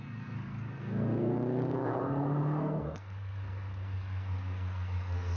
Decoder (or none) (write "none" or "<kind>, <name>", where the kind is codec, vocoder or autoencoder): codec, SNAC